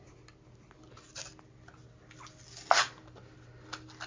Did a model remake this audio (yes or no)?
no